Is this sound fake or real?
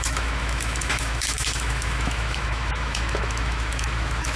fake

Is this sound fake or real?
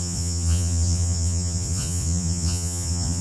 fake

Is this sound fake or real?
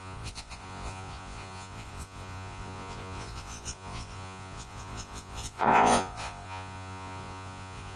fake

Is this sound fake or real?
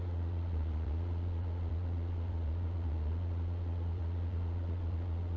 fake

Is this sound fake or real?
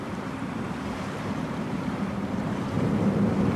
fake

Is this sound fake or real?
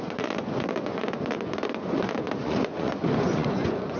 fake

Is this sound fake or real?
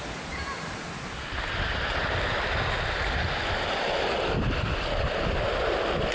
real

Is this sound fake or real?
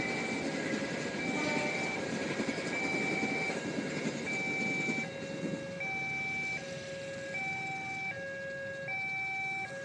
real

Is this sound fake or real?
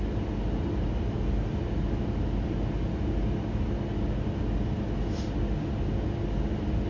real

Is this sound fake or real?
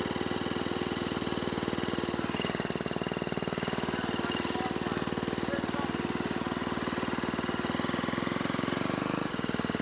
real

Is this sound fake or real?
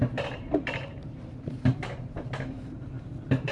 fake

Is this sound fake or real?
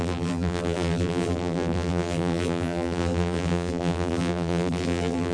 fake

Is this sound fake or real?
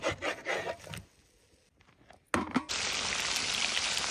real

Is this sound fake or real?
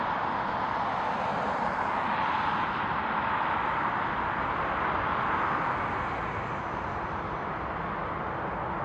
real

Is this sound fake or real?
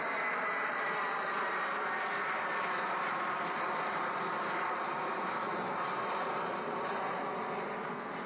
real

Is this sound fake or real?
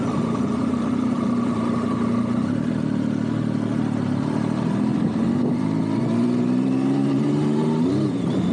fake